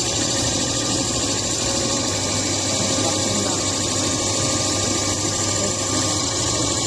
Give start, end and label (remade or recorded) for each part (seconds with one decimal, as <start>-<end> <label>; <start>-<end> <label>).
0.0-2.1 remade; 2.1-6.2 recorded; 6.2-6.9 remade